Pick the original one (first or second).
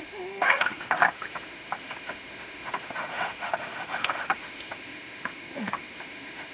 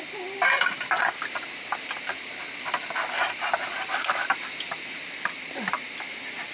second